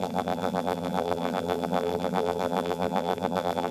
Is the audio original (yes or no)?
no